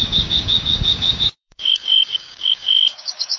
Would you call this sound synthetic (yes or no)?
yes